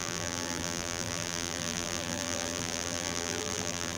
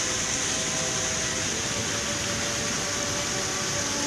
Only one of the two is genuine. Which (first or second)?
second